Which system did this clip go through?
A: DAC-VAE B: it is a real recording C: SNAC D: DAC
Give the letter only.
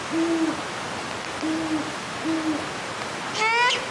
B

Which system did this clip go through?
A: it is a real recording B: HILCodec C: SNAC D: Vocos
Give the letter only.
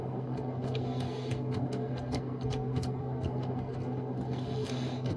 C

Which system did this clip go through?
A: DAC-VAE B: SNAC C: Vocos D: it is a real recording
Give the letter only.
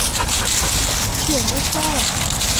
D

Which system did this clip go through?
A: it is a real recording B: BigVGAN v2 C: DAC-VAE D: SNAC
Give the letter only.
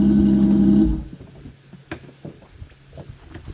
A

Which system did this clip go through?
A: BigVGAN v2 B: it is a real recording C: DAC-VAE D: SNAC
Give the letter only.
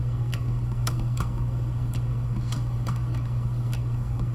D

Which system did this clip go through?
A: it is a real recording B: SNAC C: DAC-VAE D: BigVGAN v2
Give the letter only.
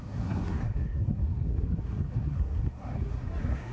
B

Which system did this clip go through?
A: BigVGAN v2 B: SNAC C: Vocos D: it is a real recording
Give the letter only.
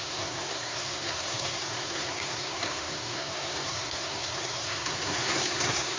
B